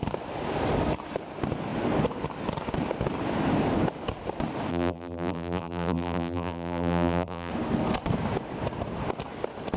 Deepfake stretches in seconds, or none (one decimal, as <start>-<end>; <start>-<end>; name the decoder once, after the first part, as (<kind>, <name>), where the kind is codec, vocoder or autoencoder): 4.7-7.5 (vocoder, BigVGAN v2)